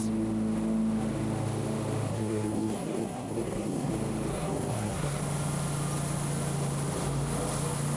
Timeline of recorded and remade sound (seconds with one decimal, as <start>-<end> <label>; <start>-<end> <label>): 0.0-2.1 recorded; 2.1-3.9 remade; 3.9-4.3 recorded; 4.3-5.2 remade; 5.2-8.0 recorded

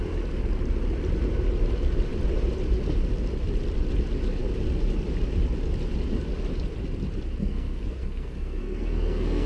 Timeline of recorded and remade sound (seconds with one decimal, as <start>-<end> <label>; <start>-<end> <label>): 0.0-7.4 recorded; 7.4-9.5 remade

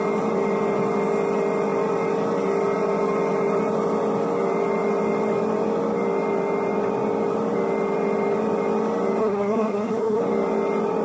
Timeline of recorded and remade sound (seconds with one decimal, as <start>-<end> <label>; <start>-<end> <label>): 0.0-9.2 recorded; 9.2-10.2 remade; 10.2-11.0 recorded

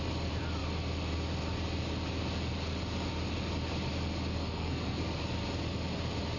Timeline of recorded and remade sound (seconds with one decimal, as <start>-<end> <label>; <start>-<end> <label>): 0.0-4.3 recorded; 4.3-5.0 remade; 5.0-6.4 recorded

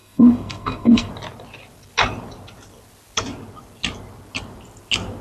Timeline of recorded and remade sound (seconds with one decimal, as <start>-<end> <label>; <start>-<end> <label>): 0.0-1.1 remade; 1.1-5.2 recorded

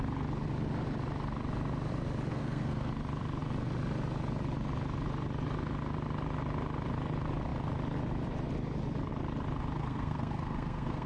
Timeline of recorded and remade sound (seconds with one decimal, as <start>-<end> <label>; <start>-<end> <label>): 0.0-2.3 recorded; 2.3-2.9 remade; 2.9-9.8 recorded; 9.8-11.1 remade

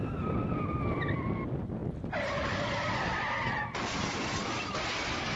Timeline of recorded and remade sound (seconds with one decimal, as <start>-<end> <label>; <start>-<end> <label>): 0.0-5.4 recorded